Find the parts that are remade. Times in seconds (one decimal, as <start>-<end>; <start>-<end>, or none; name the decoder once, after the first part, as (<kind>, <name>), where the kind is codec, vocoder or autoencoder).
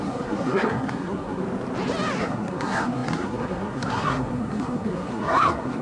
0.0-1.4 (codec, SNAC); 2.2-5.8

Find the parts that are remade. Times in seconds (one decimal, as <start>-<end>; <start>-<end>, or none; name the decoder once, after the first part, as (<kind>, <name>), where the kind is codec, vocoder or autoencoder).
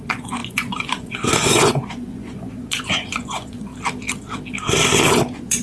0.0-3.7 (vocoder, Vocos); 5.1-5.6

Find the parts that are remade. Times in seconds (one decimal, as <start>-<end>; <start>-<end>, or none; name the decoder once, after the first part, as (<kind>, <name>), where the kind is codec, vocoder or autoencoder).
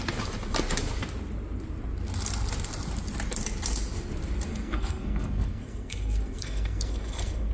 4.5-7.5 (codec, SNAC)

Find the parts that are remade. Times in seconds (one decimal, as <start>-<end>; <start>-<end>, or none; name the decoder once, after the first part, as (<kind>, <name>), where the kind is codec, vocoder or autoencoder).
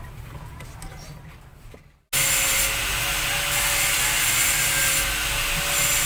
none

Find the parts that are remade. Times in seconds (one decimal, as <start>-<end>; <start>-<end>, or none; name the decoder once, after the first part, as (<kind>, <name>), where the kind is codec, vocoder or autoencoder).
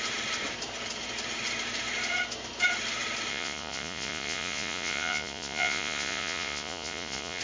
3.3-7.4 (vocoder, Vocos)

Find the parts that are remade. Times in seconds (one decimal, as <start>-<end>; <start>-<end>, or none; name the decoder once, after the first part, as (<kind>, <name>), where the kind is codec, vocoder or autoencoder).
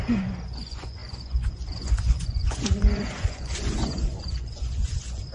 0.0-5.3 (vocoder, Vocos)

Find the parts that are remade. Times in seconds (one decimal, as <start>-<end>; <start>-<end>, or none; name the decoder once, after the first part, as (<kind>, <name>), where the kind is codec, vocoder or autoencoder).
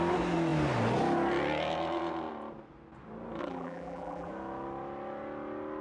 3.4-4.3 (vocoder, BigVGAN v2)